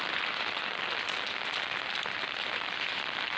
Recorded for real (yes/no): yes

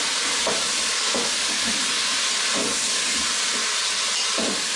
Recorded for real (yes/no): yes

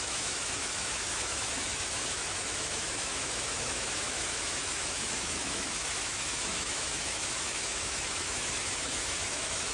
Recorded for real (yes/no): no